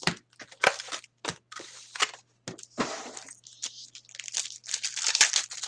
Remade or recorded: recorded